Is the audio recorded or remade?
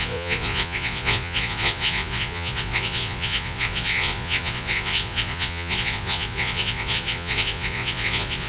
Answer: remade